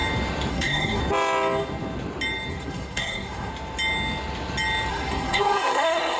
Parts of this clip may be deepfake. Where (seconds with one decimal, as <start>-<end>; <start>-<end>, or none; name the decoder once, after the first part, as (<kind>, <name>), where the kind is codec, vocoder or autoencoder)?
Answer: 0.5-1.0 (codec, SNAC); 2.5-3.5; 4.9-6.2